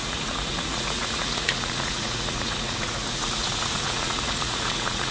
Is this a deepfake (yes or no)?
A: yes